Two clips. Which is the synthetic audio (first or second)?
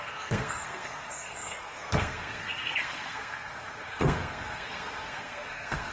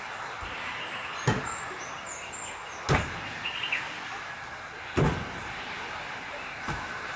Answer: first